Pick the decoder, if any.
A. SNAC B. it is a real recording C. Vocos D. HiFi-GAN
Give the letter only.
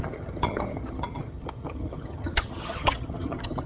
D